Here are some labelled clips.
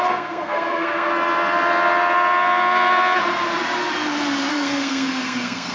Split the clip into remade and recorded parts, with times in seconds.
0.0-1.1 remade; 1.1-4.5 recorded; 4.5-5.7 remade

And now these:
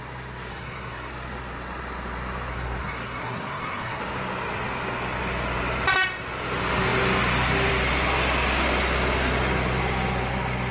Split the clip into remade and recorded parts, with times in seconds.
0.0-0.5 recorded; 0.5-1.1 remade; 1.1-2.5 recorded; 2.5-4.0 remade; 4.0-10.7 recorded

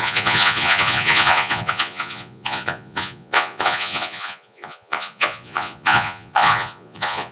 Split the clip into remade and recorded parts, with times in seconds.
0.0-7.3 remade

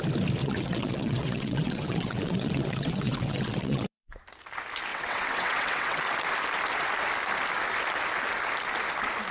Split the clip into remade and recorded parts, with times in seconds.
0.0-0.4 recorded; 0.4-4.2 remade; 4.2-4.9 recorded; 4.9-6.0 remade; 6.0-9.3 recorded